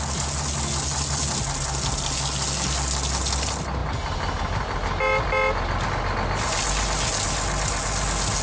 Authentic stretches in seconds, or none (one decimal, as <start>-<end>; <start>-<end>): 0.0-8.4